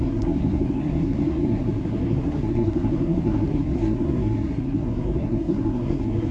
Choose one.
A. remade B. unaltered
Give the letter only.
A